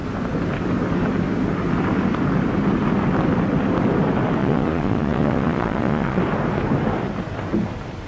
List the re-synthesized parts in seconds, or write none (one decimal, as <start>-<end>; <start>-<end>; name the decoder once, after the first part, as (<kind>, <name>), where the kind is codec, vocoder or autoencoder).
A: 4.4-6.2 (vocoder, Vocos)